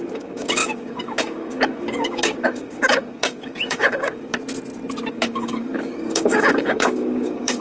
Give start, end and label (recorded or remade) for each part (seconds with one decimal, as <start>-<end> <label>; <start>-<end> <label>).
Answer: 0.0-4.3 remade; 4.3-5.1 recorded; 5.1-7.6 remade